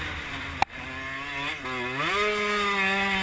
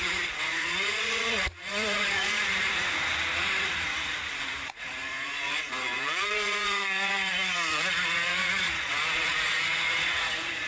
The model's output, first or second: second